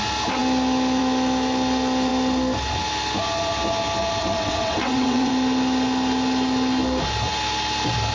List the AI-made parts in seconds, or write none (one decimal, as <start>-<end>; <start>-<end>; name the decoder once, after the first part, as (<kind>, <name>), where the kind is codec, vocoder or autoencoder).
4.2-5.3 (vocoder, WaveNeXt)